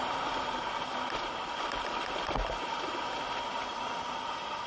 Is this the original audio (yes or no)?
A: yes